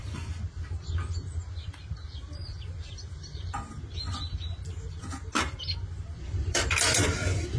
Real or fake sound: fake